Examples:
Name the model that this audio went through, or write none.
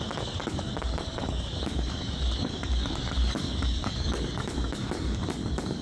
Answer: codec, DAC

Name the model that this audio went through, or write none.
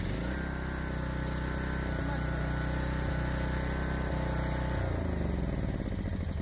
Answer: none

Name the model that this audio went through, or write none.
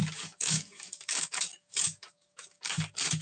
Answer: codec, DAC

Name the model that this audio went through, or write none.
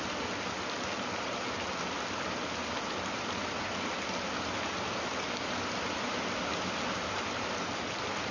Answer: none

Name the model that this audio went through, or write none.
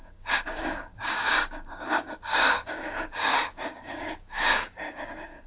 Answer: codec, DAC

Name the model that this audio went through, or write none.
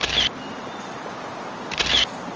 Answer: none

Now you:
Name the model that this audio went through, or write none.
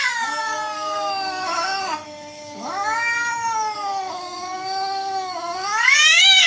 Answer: codec, DAC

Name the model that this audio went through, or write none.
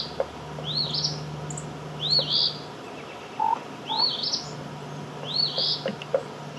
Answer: none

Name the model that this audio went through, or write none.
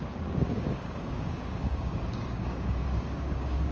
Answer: codec, DAC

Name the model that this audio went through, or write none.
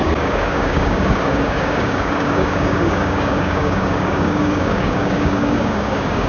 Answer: codec, DAC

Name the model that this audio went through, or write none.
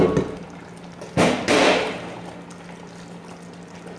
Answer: none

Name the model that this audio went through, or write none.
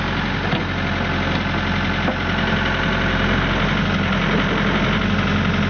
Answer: none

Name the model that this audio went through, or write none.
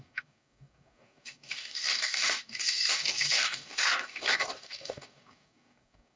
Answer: codec, DAC